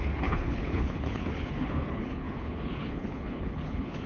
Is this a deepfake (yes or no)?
yes